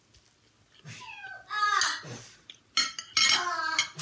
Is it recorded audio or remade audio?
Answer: recorded